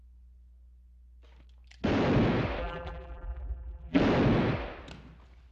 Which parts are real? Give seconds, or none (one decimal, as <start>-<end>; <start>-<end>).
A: 0.0-2.6; 4.0-5.5